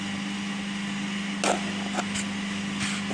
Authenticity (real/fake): real